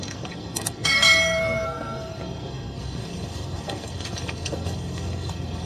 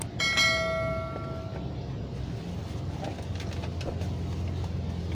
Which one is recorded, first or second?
second